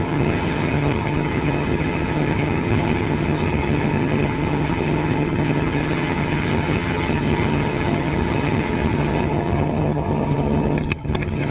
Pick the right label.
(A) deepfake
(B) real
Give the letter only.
A